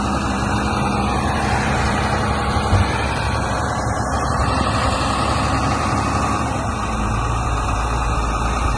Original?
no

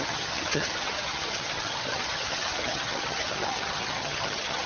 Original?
no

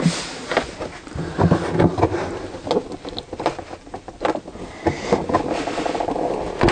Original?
yes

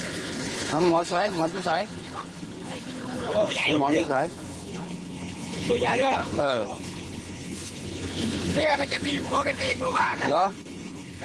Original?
no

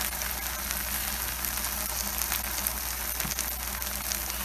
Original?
yes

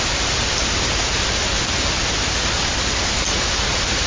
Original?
yes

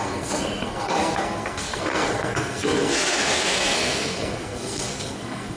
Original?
no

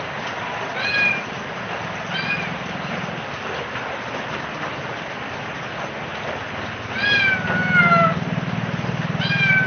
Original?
yes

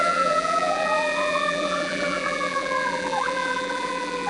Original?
no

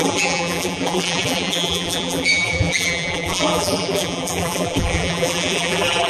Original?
no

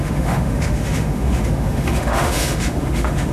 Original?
no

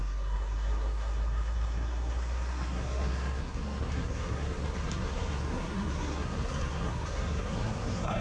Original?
no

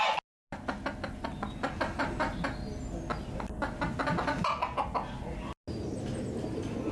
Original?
yes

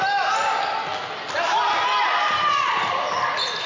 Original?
yes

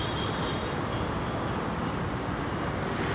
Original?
yes